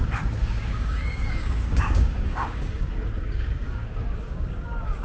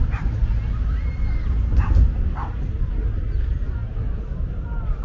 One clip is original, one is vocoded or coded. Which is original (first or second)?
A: second